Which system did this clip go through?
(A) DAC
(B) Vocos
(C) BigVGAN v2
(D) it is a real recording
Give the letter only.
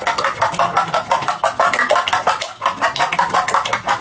D